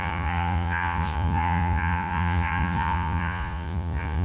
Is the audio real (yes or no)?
no